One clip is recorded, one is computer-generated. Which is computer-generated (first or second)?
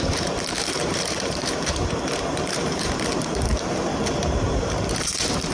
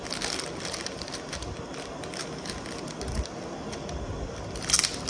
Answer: first